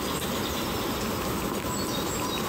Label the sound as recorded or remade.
recorded